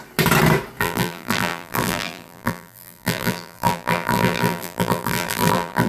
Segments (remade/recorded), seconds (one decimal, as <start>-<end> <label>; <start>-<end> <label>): 0.0-0.8 recorded; 0.8-5.9 remade